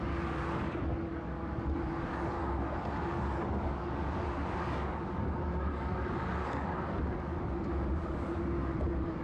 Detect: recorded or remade remade